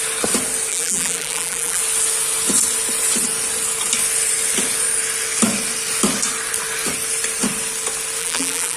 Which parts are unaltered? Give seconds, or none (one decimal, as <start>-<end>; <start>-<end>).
0.0-0.7; 1.8-8.2